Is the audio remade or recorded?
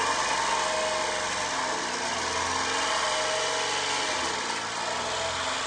recorded